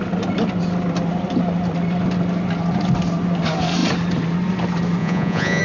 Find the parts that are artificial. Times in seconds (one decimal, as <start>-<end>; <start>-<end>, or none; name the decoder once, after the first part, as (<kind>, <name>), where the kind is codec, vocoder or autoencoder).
5.0-5.6 (vocoder, Vocos)